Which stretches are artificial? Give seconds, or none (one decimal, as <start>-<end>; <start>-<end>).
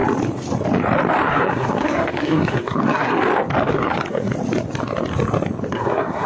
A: 1.3-3.2; 3.7-4.3; 5.7-6.3